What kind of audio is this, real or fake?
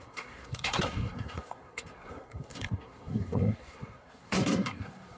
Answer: fake